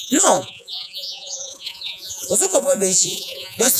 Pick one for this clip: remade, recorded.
remade